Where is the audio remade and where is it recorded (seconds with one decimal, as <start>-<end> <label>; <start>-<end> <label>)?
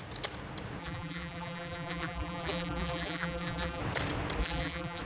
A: 0.0-0.8 recorded; 0.8-3.8 remade; 3.8-4.4 recorded; 4.4-5.0 remade